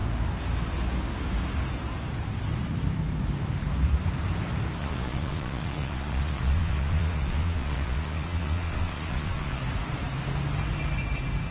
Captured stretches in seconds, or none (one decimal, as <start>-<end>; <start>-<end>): 0.0-4.8; 9.6-11.5